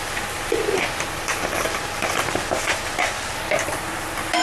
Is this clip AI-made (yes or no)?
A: yes